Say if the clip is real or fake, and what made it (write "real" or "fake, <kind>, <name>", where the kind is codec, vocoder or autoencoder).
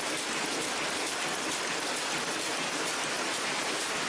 real